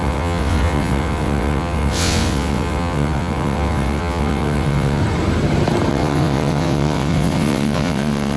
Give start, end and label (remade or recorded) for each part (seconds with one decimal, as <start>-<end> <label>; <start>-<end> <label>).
0.0-5.0 remade; 5.0-5.9 recorded; 5.9-8.4 remade

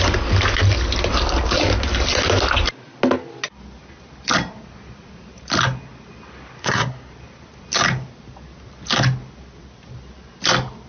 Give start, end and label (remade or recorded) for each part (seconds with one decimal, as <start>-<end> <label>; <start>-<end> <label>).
0.0-6.6 recorded; 6.6-7.1 remade; 7.1-10.9 recorded

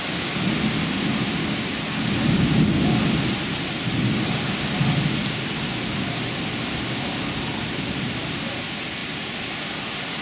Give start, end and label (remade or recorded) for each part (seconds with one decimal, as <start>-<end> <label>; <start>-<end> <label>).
0.0-10.2 recorded

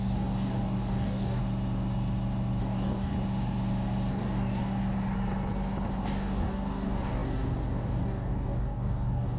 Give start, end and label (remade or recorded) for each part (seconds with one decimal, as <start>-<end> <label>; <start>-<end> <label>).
0.0-1.4 remade; 1.4-2.6 recorded; 2.6-3.1 remade; 3.1-4.1 recorded; 4.1-4.8 remade; 4.8-6.0 recorded; 6.0-9.4 remade